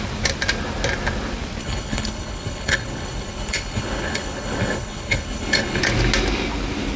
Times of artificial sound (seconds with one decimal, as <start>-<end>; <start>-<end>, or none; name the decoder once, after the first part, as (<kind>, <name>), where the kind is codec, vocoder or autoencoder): 1.6-5.8 (codec, HILCodec)